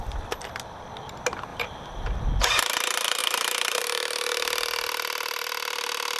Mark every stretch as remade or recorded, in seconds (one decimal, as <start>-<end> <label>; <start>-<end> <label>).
0.0-1.5 recorded; 1.5-2.3 remade; 2.3-3.2 recorded; 3.2-3.8 remade; 3.8-6.2 recorded